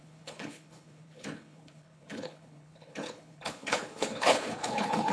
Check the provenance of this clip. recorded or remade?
remade